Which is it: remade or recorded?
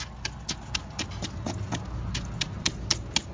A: recorded